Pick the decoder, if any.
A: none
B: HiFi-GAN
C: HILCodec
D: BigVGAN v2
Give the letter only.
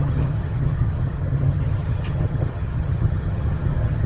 B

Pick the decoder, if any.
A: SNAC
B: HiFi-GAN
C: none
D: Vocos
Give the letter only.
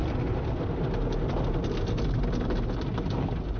C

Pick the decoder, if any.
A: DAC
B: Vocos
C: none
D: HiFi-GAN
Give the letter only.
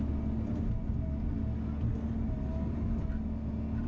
C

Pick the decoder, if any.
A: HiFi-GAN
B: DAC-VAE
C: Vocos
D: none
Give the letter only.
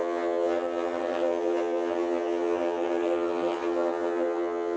A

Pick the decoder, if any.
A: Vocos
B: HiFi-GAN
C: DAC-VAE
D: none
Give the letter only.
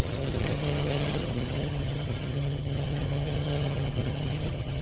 B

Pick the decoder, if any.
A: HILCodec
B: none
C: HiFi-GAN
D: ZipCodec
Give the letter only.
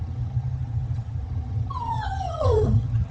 C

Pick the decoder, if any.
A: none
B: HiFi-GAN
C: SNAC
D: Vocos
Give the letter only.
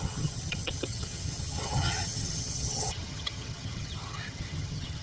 B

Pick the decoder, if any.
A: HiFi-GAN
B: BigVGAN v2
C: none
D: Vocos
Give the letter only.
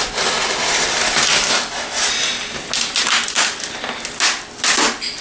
C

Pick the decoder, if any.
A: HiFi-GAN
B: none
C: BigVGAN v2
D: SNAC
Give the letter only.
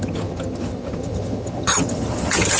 A